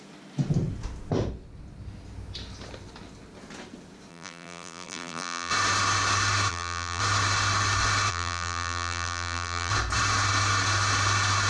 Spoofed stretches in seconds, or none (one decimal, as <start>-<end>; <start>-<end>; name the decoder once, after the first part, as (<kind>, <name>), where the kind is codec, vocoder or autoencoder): 4.1-5.5 (vocoder, BigVGAN v2); 6.5-7.0; 8.1-9.7